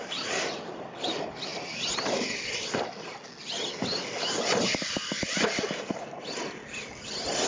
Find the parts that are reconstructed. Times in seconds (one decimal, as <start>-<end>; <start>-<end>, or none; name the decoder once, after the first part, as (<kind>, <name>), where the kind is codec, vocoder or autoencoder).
none